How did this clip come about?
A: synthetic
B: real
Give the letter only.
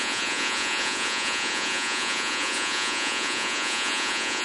A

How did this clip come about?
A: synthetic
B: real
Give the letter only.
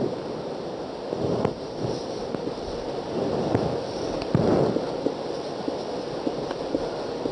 B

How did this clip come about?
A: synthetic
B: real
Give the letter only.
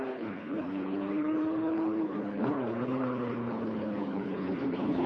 A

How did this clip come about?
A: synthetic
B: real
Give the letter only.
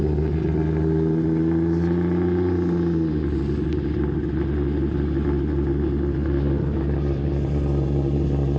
B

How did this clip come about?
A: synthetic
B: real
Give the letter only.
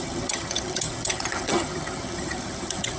A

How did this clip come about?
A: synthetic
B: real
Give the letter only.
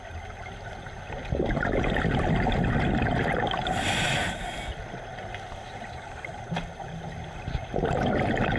B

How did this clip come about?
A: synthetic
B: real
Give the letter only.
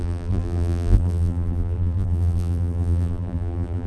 A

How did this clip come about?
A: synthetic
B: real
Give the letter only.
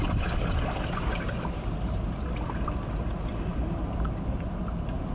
B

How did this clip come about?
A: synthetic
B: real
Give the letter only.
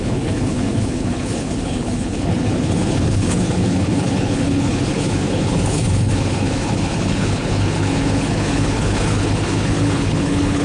A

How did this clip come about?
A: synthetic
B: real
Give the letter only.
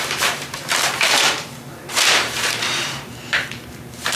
A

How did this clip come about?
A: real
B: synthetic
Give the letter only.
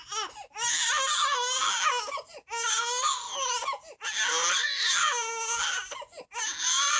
A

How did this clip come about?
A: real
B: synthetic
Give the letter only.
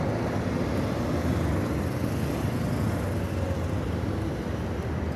A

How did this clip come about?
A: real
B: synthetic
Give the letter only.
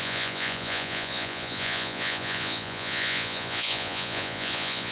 B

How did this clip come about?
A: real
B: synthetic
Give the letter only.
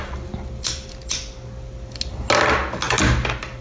A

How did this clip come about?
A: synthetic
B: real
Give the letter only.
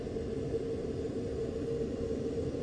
B